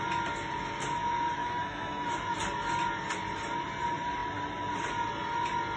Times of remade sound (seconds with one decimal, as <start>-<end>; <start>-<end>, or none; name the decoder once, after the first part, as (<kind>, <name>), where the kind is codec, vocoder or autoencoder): 1.4-2.1 (autoencoder, DAC-VAE)